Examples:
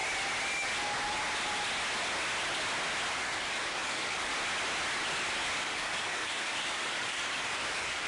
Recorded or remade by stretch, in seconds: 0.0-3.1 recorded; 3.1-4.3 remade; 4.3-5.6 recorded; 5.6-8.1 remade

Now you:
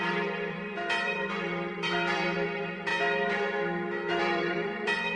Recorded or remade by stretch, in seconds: 0.0-2.9 remade; 2.9-4.2 recorded; 4.2-5.2 remade

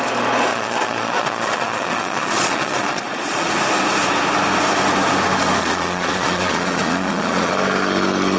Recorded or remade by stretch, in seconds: 0.0-0.5 recorded; 0.5-3.5 remade; 3.5-5.6 recorded; 5.6-7.5 remade; 7.5-8.4 recorded

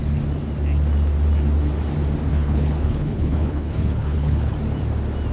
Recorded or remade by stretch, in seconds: 0.0-2.3 recorded; 2.3-4.5 remade; 4.5-5.3 recorded

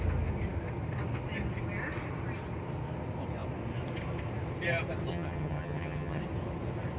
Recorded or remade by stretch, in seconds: 0.0-5.1 recorded; 5.1-6.2 remade; 6.2-7.0 recorded

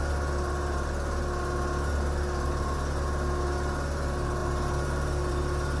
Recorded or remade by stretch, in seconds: 0.0-5.8 recorded

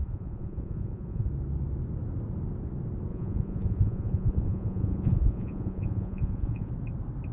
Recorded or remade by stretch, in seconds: 0.0-1.3 remade; 1.3-3.1 recorded; 3.1-6.7 remade; 6.7-7.3 recorded

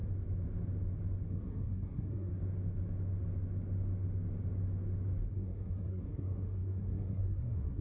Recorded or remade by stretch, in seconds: 0.0-1.3 recorded; 1.3-2.3 remade; 2.3-5.3 recorded; 5.3-7.8 remade